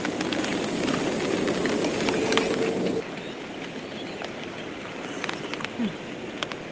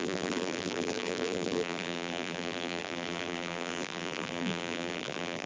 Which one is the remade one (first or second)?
second